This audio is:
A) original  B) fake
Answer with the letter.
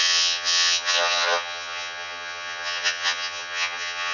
B